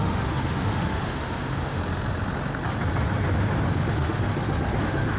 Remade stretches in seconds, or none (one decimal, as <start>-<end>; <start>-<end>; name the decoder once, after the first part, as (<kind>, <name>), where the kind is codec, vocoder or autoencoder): 0.0-1.8 (autoencoder, DAC-VAE); 3.9-4.3; 4.8-5.2